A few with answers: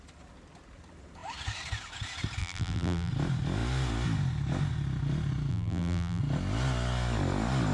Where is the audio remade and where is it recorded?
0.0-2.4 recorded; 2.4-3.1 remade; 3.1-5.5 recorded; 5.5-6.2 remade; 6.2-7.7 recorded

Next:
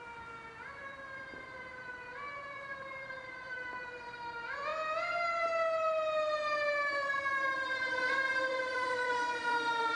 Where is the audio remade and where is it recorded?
0.0-4.7 remade; 4.7-6.9 recorded; 6.9-10.0 remade

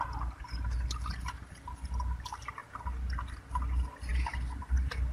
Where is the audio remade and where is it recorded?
0.0-2.6 remade; 2.6-3.3 recorded; 3.3-4.1 remade; 4.1-4.6 recorded; 4.6-5.1 remade

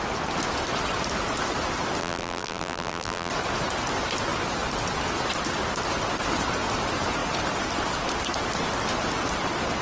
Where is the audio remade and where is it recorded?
0.0-2.0 recorded; 2.0-3.3 remade; 3.3-9.8 recorded

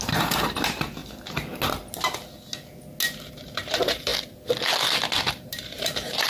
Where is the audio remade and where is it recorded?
0.0-1.0 remade; 1.0-3.3 recorded; 3.3-4.1 remade; 4.1-5.3 recorded; 5.3-6.3 remade